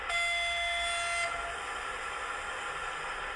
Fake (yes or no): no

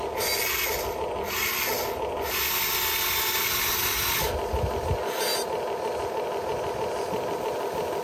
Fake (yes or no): no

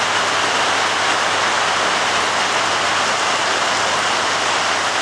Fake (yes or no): no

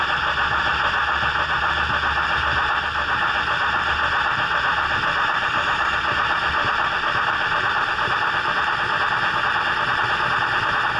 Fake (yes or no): no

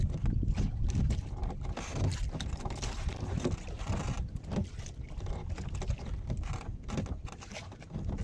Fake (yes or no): no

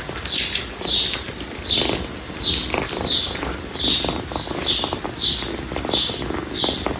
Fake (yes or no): no